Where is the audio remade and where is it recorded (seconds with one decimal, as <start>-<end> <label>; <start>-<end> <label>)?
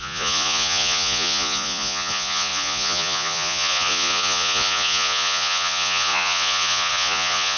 0.0-7.6 remade